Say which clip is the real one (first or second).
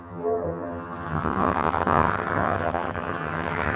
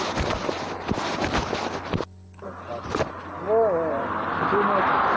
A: second